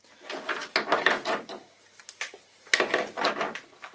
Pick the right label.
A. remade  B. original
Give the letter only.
B